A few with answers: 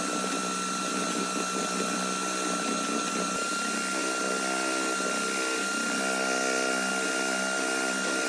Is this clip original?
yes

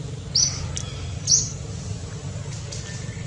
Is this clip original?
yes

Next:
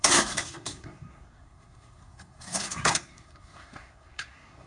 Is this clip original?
no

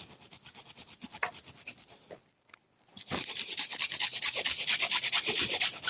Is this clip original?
yes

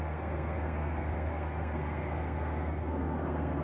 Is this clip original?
no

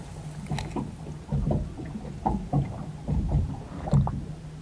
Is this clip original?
yes